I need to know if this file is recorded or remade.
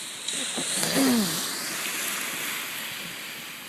recorded